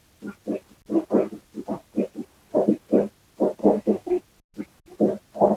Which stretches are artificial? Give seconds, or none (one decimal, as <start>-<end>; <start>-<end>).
3.6-4.2